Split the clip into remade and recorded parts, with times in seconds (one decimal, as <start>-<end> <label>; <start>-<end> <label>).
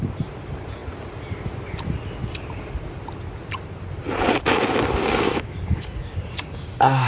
0.0-5.0 recorded; 5.0-7.1 remade